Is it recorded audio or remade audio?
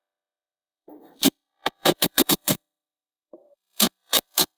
remade